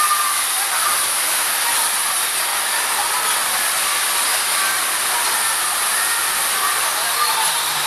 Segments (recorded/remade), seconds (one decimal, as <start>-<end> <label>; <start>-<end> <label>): 0.0-0.9 recorded; 0.9-1.5 remade; 1.5-7.9 recorded